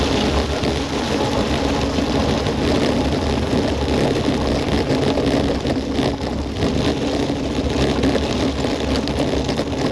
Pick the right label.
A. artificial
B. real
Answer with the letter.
B